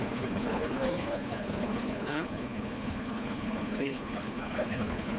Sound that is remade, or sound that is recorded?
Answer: remade